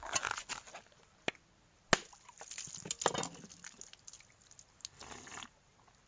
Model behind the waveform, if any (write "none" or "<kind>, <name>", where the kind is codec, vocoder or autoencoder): none